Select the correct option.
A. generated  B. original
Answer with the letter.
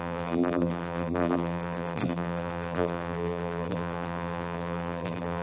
A